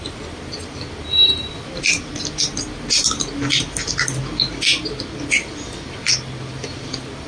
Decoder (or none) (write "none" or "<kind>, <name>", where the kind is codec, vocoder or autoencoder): none